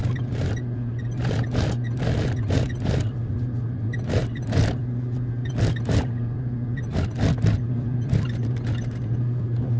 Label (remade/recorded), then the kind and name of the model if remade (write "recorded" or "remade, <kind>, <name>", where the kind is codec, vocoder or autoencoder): recorded